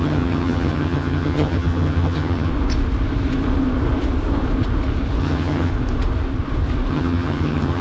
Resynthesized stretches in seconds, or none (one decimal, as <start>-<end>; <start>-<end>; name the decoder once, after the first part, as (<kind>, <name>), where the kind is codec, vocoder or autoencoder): 0.0-2.5 (vocoder, HiFi-GAN); 5.2-5.7; 6.9-7.8